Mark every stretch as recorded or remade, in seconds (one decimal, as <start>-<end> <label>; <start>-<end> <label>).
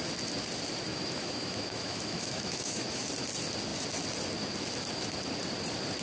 0.0-0.9 recorded; 0.9-3.1 remade; 3.1-6.0 recorded